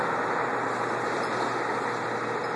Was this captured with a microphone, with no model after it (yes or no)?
yes